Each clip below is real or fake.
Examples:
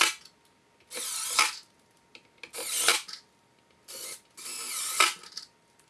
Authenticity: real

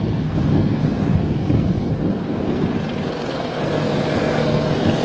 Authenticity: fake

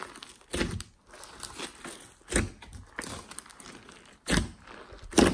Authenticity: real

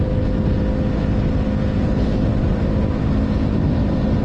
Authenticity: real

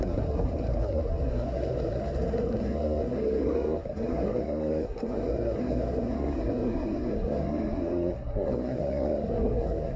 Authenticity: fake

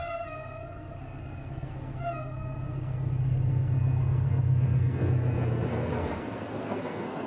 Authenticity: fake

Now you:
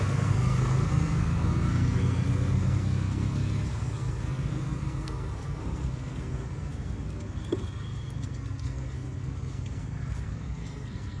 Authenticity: fake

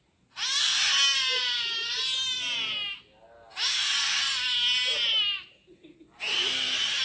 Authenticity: real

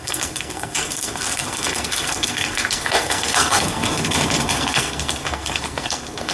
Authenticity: fake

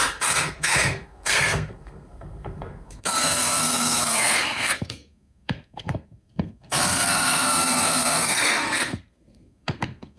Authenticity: fake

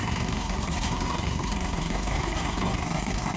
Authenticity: fake